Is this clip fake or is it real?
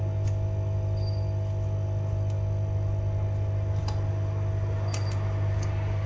real